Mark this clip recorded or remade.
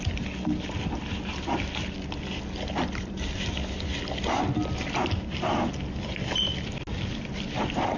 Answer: recorded